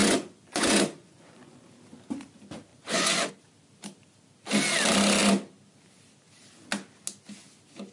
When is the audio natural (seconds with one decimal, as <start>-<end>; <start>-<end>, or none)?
1.7-2.7; 3.3-7.9